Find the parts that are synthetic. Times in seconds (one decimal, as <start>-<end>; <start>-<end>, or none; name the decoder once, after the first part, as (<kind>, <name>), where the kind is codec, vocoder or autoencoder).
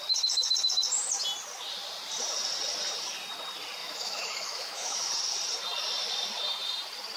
3.8-5.1 (autoencoder, DAC-VAE)